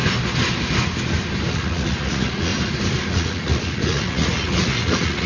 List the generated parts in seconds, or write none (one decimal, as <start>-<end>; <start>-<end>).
1.5-2.5; 3.1-5.3